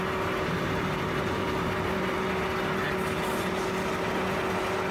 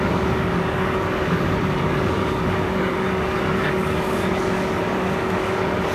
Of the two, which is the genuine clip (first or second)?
first